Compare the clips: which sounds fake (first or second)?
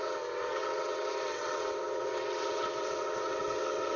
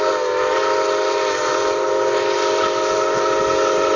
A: first